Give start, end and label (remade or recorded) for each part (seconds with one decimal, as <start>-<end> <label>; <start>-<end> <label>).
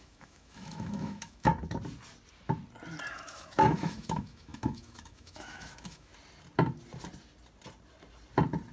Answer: 0.0-1.5 remade; 1.5-3.1 recorded; 3.1-6.1 remade; 6.1-8.7 recorded